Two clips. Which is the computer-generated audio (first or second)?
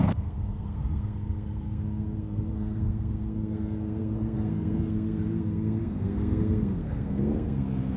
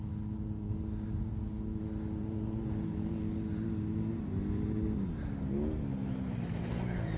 first